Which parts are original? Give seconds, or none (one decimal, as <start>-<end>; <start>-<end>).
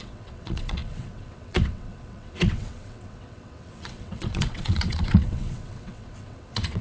none